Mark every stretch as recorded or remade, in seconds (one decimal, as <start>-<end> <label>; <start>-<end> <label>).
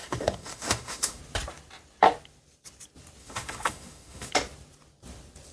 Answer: 0.0-1.2 remade; 1.2-3.2 recorded; 3.2-4.3 remade; 4.3-5.5 recorded